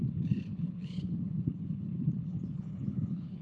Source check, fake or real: fake